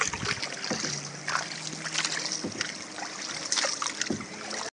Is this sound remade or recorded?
recorded